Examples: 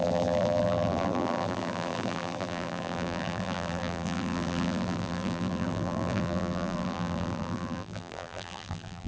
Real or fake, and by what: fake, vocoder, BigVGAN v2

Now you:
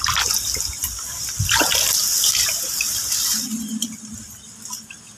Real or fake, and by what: real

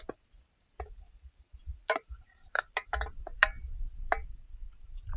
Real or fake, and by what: fake, vocoder, BigVGAN v2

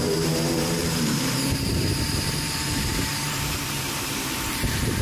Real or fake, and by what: fake, vocoder, BigVGAN v2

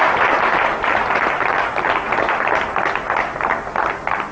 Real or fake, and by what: real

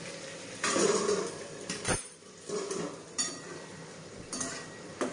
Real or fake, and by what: fake, vocoder, BigVGAN v2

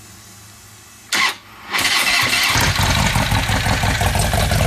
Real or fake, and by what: real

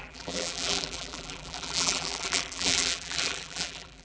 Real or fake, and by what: fake, vocoder, BigVGAN v2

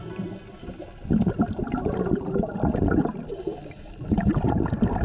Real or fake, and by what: fake, vocoder, BigVGAN v2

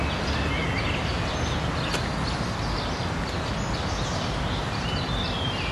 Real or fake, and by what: real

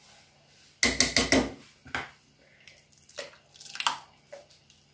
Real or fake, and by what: real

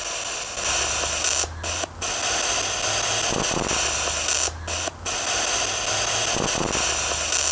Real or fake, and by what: real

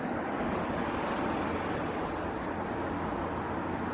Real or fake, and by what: real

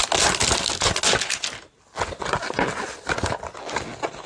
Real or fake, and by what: real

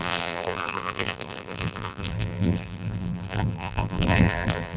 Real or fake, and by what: fake, vocoder, BigVGAN v2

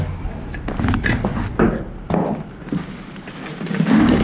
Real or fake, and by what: real